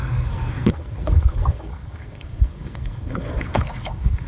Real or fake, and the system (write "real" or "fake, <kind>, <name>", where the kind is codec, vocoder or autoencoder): fake, codec, SNAC